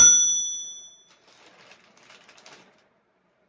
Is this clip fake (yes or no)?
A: no